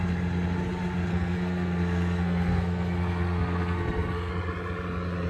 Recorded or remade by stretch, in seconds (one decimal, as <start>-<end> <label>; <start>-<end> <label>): 0.0-1.1 recorded; 1.1-4.3 remade; 4.3-5.3 recorded